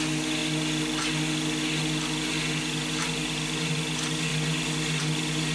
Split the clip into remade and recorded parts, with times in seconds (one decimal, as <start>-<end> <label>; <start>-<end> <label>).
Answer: 0.0-5.5 recorded